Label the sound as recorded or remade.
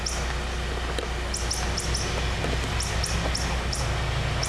recorded